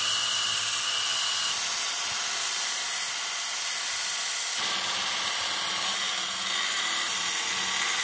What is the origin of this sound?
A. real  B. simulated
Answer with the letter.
A